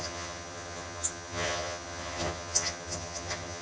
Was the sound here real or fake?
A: fake